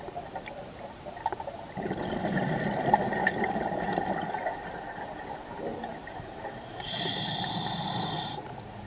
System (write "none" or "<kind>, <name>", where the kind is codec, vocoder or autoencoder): none